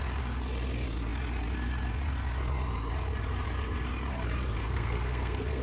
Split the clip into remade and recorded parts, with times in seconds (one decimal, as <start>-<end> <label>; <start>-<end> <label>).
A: 0.0-4.6 recorded; 4.6-5.6 remade